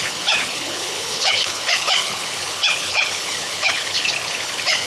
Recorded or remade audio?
remade